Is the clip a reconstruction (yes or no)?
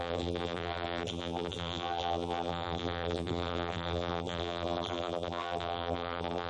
yes